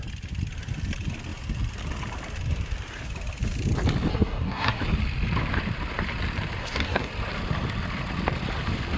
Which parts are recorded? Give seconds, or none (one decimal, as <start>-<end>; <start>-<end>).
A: 0.0-4.1; 4.8-6.6; 7.1-9.0